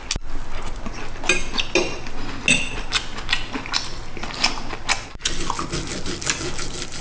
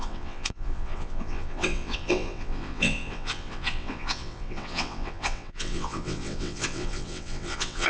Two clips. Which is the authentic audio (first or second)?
first